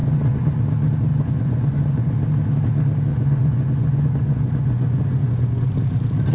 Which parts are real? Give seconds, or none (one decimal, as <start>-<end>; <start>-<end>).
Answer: 0.6-1.1; 2.1-3.1; 5.7-6.3